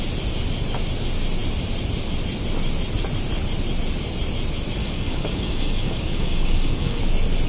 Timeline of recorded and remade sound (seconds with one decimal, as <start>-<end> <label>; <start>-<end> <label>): 0.0-4.8 recorded; 4.8-7.0 remade; 7.0-7.5 recorded